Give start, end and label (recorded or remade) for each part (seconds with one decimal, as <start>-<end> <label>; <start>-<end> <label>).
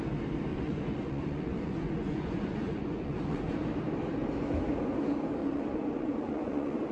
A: 0.0-0.5 recorded; 0.5-3.5 remade; 3.5-5.4 recorded; 5.4-6.9 remade